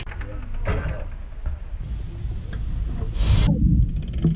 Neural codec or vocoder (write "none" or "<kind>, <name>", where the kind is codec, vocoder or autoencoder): none